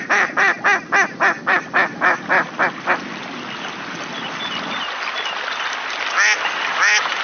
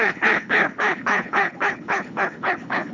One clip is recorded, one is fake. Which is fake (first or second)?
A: second